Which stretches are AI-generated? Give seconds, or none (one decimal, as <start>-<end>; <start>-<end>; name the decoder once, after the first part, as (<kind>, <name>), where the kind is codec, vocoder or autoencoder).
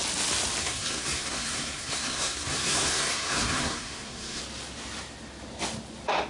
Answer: 0.6-4.4 (codec, SNAC)